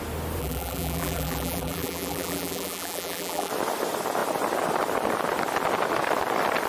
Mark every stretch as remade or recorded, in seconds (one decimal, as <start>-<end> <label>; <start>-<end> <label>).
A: 0.0-0.4 recorded; 0.4-3.5 remade; 3.5-6.7 recorded

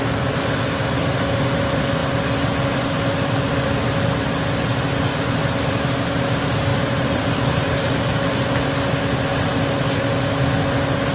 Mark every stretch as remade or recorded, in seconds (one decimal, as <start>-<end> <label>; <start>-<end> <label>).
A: 0.0-11.1 recorded

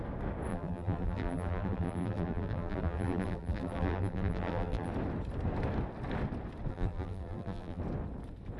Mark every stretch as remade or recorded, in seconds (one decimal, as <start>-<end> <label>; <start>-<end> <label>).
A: 0.0-0.5 recorded; 0.5-4.9 remade; 4.9-6.7 recorded; 6.7-7.8 remade; 7.8-8.6 recorded

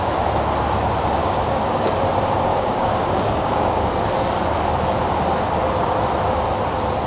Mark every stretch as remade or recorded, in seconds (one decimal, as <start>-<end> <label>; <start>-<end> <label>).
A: 0.0-1.2 recorded; 1.2-1.9 remade; 1.9-2.5 recorded; 2.5-4.0 remade; 4.0-7.1 recorded

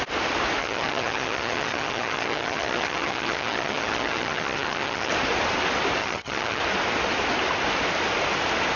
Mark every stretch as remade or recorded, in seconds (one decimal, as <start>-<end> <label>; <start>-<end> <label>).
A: 0.0-0.6 recorded; 0.6-5.1 remade; 5.1-6.0 recorded; 6.0-6.6 remade; 6.6-8.8 recorded

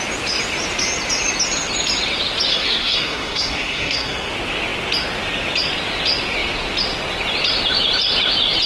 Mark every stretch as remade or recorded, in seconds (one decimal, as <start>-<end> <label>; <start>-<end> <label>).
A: 0.0-2.5 recorded; 2.5-4.3 remade; 4.3-8.7 recorded